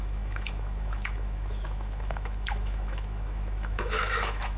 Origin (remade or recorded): remade